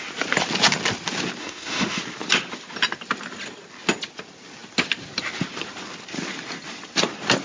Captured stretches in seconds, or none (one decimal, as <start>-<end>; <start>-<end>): 0.0-1.4; 2.0-7.4